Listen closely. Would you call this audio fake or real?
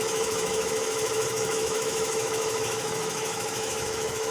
fake